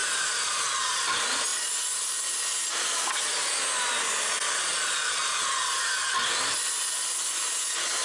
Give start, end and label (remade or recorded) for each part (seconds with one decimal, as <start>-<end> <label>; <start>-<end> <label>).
0.0-0.9 remade; 0.9-8.0 recorded